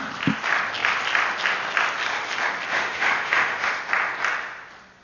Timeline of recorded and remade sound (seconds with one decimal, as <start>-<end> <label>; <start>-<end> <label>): 0.0-2.7 recorded; 2.7-3.7 remade; 3.7-5.0 recorded